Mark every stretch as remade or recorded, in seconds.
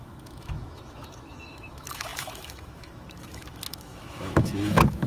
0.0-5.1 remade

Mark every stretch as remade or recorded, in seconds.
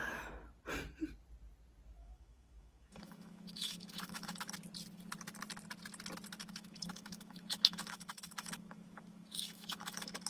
0.0-2.0 recorded; 2.0-4.5 remade; 4.5-6.4 recorded; 6.4-10.3 remade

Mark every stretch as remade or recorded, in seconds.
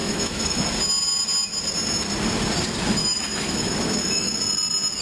0.0-0.6 remade; 0.6-3.0 recorded; 3.0-4.3 remade; 4.3-5.0 recorded